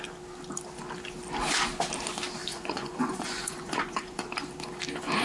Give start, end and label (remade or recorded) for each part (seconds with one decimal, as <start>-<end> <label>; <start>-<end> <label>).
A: 0.0-2.4 recorded; 2.4-4.2 remade; 4.2-5.2 recorded